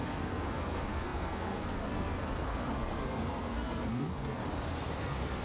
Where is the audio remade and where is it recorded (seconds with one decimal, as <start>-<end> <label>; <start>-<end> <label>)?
0.0-4.4 remade; 4.4-5.0 recorded; 5.0-5.4 remade